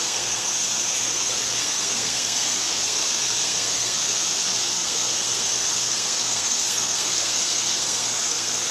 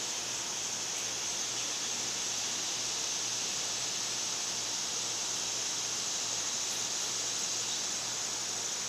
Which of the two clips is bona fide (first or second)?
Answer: second